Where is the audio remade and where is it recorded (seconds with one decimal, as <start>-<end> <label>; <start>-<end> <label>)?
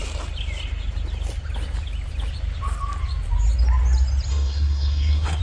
0.0-4.3 recorded; 4.3-5.4 remade